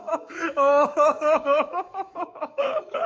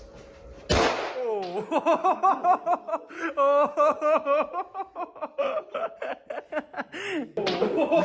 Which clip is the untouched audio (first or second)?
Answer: second